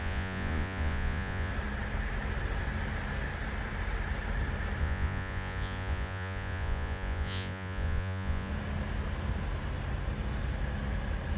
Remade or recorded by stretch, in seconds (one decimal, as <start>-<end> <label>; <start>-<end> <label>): 0.0-1.5 remade; 1.5-4.8 recorded; 4.8-8.5 remade; 8.5-11.4 recorded